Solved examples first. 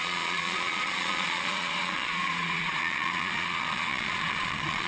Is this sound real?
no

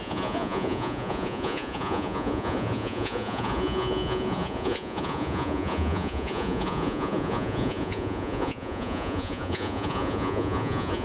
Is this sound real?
no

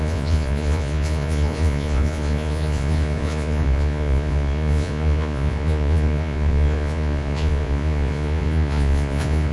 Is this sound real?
no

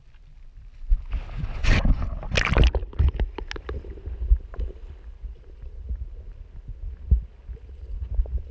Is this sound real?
yes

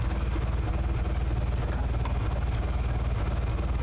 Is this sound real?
yes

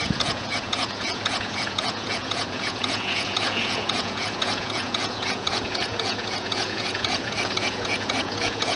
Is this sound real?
no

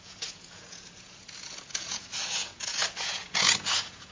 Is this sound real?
no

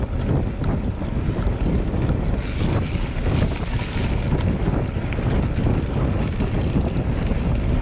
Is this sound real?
yes